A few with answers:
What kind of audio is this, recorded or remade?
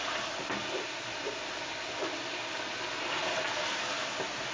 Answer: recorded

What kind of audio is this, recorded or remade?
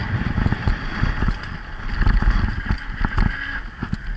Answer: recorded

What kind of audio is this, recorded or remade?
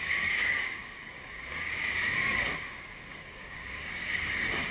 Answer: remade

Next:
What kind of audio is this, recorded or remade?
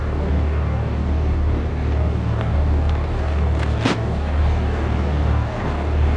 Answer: remade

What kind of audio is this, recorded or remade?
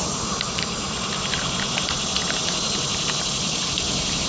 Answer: recorded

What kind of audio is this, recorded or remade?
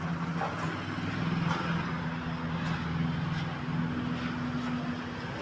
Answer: recorded